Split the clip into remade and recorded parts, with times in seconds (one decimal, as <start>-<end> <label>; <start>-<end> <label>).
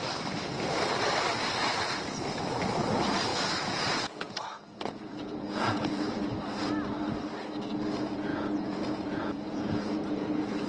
0.0-3.3 recorded; 3.3-6.1 remade; 6.1-8.3 recorded; 8.3-10.7 remade